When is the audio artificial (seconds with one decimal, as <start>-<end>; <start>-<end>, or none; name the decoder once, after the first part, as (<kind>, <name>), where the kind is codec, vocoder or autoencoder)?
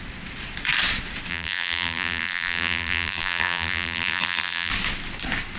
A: 1.3-4.7 (vocoder, BigVGAN v2)